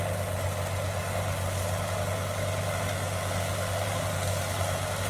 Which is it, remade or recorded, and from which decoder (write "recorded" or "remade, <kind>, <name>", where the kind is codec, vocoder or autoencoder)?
recorded